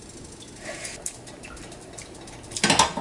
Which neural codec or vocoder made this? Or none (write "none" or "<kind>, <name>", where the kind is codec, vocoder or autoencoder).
none